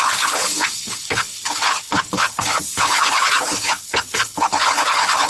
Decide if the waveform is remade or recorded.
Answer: remade